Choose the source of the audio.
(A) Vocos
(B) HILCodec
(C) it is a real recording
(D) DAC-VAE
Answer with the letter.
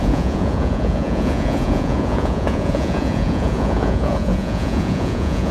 A